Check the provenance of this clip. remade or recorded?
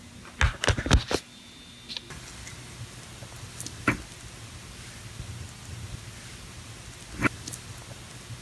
recorded